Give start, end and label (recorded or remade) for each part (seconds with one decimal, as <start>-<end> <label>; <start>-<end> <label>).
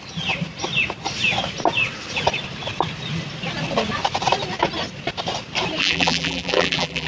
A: 0.0-5.8 recorded; 5.8-7.1 remade